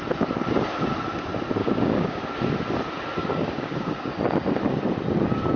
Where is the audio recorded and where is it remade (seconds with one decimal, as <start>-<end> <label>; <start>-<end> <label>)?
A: 0.0-1.6 recorded; 1.6-2.3 remade; 2.3-3.2 recorded; 3.2-4.1 remade; 4.1-5.6 recorded